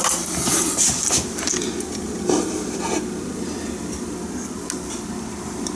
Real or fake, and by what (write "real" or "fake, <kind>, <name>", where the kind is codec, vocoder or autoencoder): real